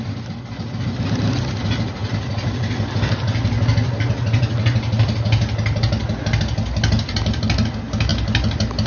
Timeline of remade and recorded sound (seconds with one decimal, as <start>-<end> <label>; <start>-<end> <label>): 0.0-8.9 recorded